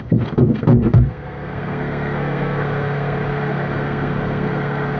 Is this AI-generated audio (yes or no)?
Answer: yes